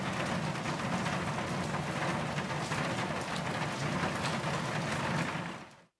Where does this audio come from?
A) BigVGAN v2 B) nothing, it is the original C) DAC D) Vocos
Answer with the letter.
B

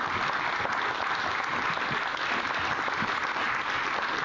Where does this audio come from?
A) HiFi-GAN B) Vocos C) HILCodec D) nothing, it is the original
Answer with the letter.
D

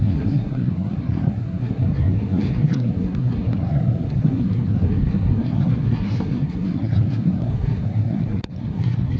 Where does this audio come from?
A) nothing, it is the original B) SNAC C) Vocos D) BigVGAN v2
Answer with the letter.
B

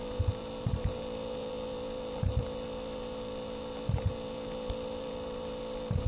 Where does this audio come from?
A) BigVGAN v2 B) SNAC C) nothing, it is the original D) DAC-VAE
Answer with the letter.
A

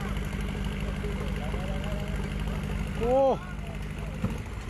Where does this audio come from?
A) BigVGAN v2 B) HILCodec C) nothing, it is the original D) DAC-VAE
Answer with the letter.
C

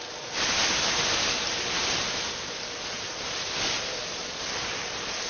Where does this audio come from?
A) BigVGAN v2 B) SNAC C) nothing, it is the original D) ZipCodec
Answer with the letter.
C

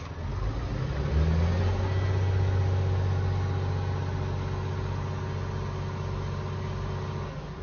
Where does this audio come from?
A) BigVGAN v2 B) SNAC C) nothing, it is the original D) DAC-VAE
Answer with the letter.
C